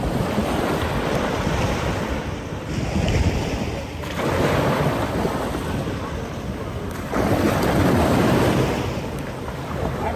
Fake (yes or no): yes